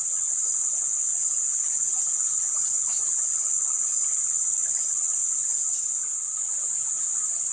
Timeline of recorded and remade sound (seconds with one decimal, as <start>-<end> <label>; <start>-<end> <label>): 0.0-0.4 recorded; 0.4-2.8 remade; 2.8-5.2 recorded; 5.2-7.0 remade; 7.0-7.5 recorded